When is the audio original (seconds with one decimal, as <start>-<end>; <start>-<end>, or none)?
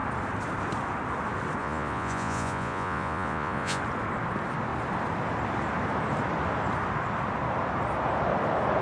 0.0-1.6; 3.8-8.8